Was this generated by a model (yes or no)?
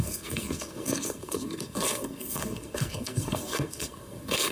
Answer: yes